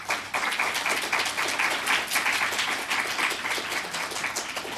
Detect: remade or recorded remade